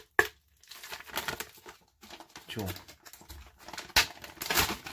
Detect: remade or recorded recorded